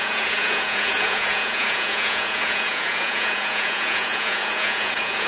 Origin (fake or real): fake